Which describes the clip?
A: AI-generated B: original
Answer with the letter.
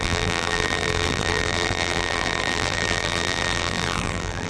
A